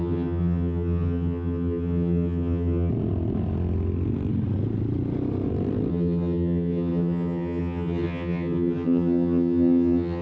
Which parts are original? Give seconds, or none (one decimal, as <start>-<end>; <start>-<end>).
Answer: 2.9-5.9